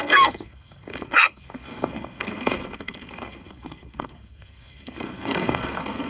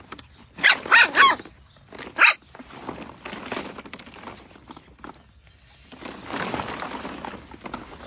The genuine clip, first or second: second